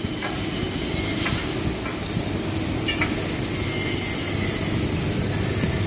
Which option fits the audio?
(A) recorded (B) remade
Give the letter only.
A